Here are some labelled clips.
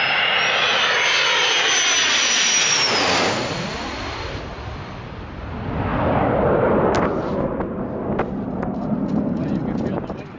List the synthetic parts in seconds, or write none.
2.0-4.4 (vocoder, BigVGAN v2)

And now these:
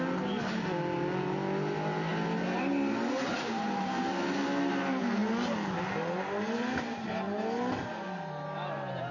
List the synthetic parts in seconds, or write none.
none

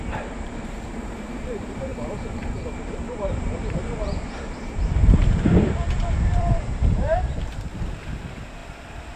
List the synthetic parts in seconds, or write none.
0.0-7.7 (vocoder, BigVGAN v2); 8.2-8.6

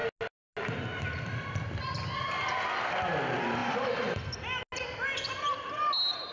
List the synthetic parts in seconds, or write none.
none